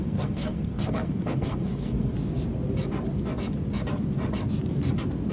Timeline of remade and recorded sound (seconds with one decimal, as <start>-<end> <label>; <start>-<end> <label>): 0.0-2.1 remade; 2.1-5.3 recorded